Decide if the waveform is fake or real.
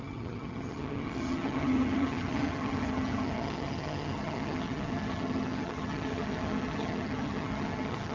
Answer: fake